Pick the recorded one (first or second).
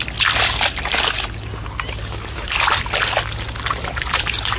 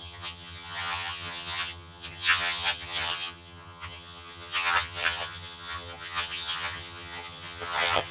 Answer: first